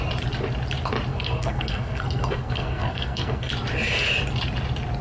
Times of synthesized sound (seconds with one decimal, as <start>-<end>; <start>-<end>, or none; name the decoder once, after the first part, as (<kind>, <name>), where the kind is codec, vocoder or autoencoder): 1.1-3.5 (codec, SNAC)